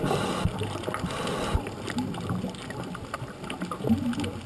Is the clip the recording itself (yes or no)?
yes